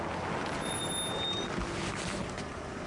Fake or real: real